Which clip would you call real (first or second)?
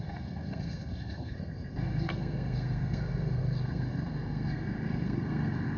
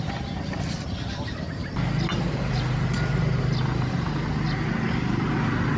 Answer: second